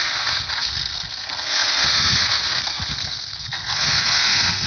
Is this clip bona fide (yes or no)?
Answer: no